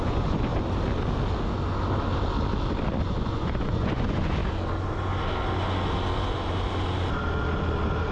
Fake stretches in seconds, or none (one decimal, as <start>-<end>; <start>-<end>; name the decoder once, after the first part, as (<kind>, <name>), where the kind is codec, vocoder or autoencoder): 0.0-0.5 (vocoder, Vocos); 3.0-4.4

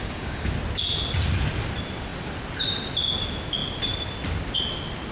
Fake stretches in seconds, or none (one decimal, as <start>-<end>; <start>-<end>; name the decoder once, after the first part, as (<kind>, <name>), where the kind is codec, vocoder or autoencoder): 0.0-0.5 (codec, DAC)

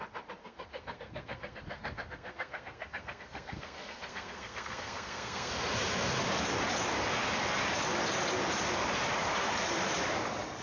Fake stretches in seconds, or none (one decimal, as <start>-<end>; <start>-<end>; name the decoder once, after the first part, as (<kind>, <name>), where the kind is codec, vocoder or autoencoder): 0.4-5.5 (codec, SNAC)

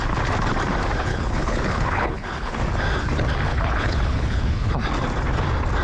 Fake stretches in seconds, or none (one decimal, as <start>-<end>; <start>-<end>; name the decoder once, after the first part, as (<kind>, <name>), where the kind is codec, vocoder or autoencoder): 1.1-2.6 (codec, HILCodec); 3.5-4.7

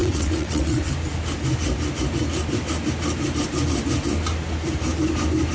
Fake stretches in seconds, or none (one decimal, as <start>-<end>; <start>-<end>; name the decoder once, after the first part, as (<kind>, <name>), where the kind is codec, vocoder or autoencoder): 0.0-0.9 (vocoder, WaveNeXt)